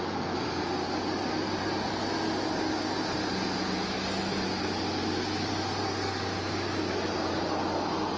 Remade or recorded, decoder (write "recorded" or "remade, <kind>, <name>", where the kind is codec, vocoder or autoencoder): recorded